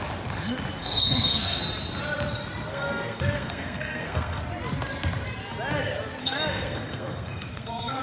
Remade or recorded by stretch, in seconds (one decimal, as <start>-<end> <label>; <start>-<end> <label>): 0.0-0.8 recorded; 0.8-1.6 remade; 1.6-2.7 recorded; 2.7-4.4 remade; 4.4-6.2 recorded; 6.2-8.0 remade

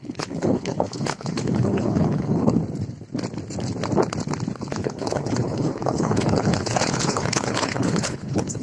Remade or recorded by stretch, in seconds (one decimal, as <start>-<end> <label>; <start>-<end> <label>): 0.0-2.6 remade; 2.6-4.6 recorded; 4.6-8.6 remade

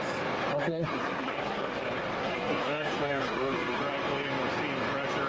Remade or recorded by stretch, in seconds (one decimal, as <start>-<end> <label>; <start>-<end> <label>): 0.0-0.5 recorded; 0.5-1.8 remade; 1.8-2.2 recorded; 2.2-3.8 remade; 3.8-5.3 recorded

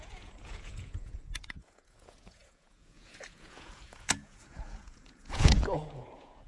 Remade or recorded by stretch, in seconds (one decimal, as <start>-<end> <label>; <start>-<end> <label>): 0.0-6.5 remade

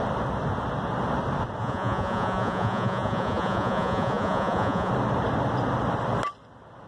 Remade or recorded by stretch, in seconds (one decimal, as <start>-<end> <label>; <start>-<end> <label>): 0.0-1.6 recorded; 1.6-4.9 remade; 4.9-6.9 recorded